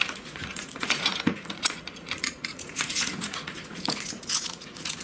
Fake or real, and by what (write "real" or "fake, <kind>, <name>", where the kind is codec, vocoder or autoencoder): fake, vocoder, Vocos